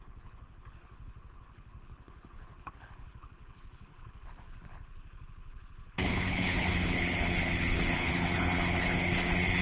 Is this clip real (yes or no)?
no